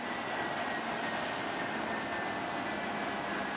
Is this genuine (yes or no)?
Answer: yes